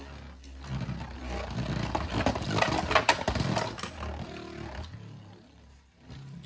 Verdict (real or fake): real